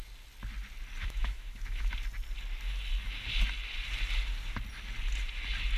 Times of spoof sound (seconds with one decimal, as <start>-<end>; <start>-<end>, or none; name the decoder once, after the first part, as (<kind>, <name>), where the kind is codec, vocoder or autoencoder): 1.0-1.9 (autoencoder, DAC-VAE)